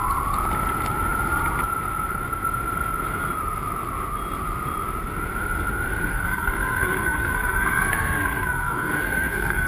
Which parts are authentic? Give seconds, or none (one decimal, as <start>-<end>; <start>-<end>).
0.0-6.1